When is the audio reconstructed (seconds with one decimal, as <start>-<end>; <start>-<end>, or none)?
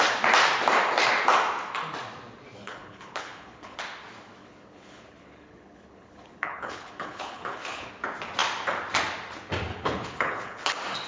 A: 2.6-3.8; 4.4-7.9; 9.7-10.7